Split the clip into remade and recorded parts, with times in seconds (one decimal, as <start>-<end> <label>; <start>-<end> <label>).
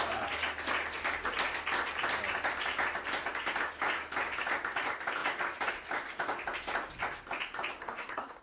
0.0-7.8 recorded; 7.8-8.4 remade